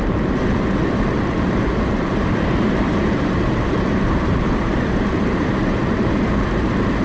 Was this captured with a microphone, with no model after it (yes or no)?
no